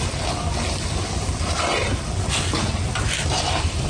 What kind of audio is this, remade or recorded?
remade